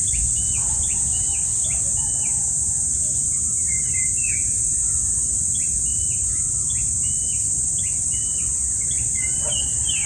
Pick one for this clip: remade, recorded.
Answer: remade